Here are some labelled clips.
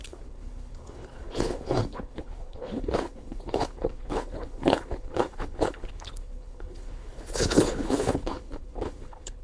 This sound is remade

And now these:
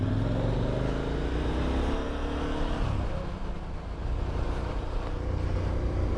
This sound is recorded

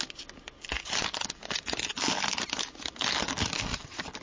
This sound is recorded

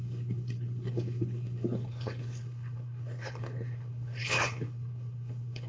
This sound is remade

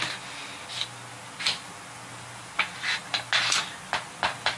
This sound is recorded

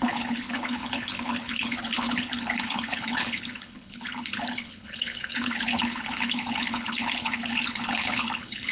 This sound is remade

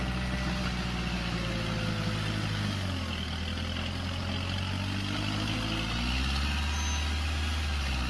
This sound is recorded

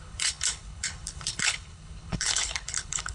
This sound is remade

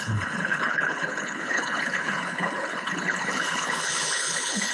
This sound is remade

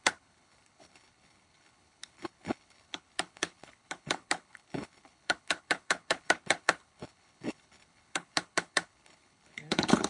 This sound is remade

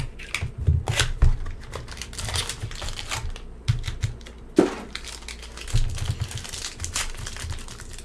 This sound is recorded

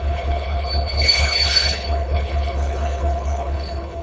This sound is remade